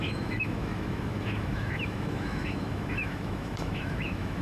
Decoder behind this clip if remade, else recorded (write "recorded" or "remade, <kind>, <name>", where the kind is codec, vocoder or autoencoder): remade, autoencoder, DAC-VAE